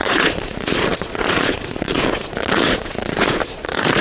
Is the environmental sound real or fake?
fake